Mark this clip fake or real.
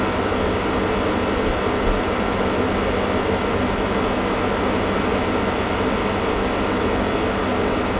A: real